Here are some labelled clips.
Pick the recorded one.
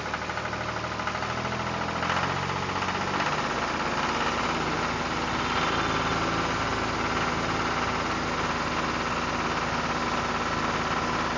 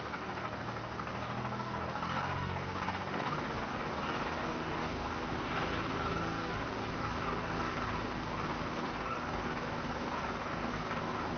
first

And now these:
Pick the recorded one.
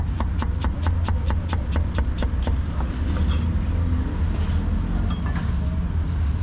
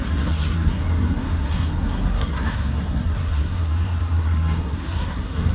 first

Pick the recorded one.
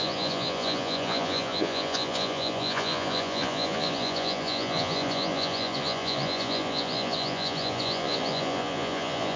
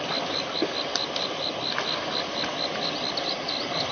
second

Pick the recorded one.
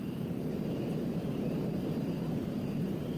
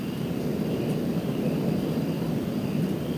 second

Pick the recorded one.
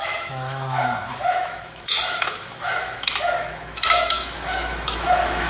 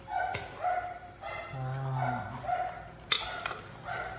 second